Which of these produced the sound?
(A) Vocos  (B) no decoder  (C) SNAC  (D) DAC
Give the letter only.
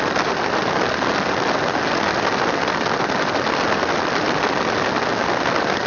B